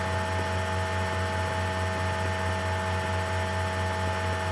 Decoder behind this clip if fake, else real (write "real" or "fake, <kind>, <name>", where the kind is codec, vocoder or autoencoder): real